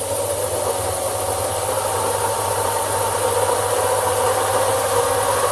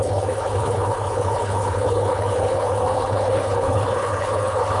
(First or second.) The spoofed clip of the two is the second